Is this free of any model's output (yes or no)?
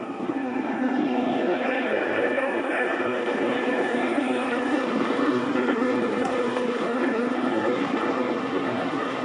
no